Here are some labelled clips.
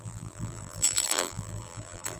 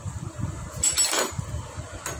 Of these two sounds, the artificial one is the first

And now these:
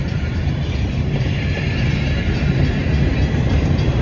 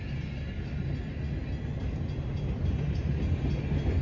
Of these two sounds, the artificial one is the first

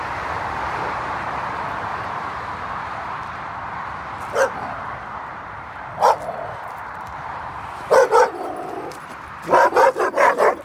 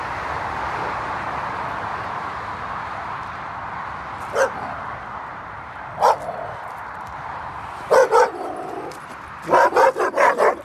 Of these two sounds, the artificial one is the first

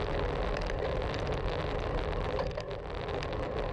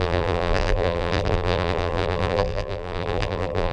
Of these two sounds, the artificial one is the second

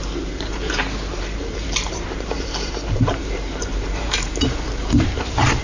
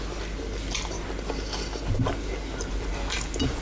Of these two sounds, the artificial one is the first